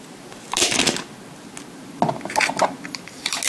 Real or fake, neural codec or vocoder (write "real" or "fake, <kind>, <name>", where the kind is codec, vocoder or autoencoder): real